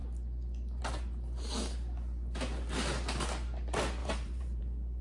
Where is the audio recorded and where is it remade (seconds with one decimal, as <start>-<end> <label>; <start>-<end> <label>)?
0.0-4.0 recorded; 4.0-4.6 remade; 4.6-5.0 recorded